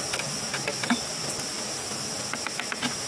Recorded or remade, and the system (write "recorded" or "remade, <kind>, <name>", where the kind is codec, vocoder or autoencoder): recorded